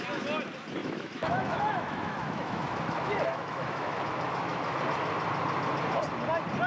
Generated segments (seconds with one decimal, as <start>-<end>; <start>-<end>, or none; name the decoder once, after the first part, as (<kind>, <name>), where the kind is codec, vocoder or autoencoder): 0.8-4.8 (autoencoder, DAC-VAE)